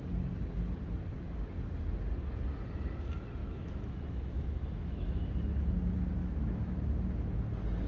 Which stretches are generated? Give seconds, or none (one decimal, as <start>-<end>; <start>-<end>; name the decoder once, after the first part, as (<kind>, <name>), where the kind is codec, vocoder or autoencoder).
3.4-5.3 (autoencoder, DAC-VAE); 6.2-6.9